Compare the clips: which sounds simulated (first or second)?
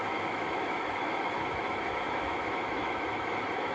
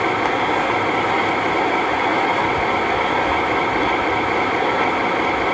first